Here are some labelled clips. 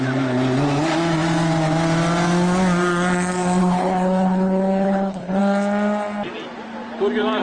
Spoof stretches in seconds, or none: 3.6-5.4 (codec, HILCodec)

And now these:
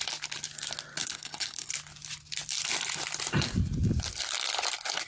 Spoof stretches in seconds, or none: 1.0-1.7 (codec, HILCodec)

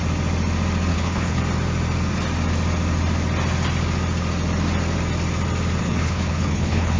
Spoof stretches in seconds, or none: 0.9-1.4 (codec, HILCodec); 5.8-7.0

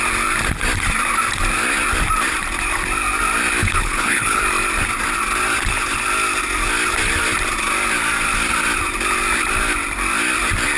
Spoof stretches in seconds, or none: 3.6-4.4 (codec, HILCodec)

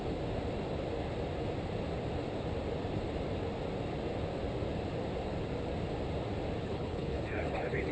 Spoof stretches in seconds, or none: 6.6-7.9 (codec, HILCodec)